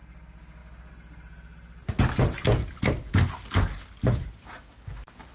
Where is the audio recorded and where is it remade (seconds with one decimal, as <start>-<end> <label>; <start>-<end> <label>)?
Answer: 0.0-4.0 recorded; 4.0-4.6 remade; 4.6-5.3 recorded